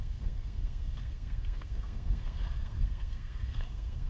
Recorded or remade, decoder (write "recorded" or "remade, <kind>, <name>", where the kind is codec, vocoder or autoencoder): remade, codec, SNAC